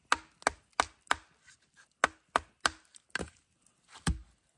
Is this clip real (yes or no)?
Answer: yes